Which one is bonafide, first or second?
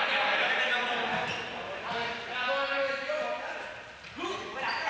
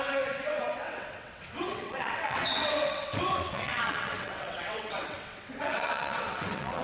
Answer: first